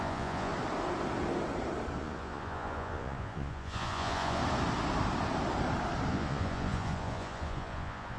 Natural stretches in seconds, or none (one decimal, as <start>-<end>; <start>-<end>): 0.5-2.0; 4.4-6.1